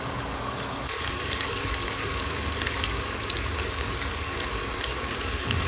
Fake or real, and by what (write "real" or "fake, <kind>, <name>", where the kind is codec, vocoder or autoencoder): fake, codec, DAC